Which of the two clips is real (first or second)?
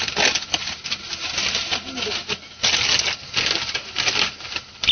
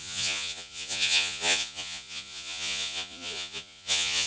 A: first